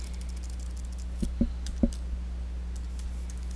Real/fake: real